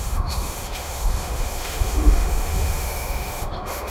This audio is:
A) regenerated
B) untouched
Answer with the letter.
A